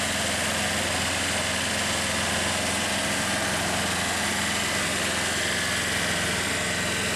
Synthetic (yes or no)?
no